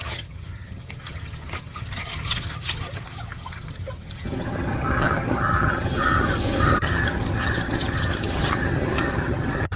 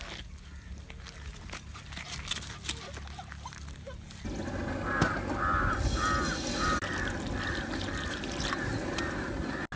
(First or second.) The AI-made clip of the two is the first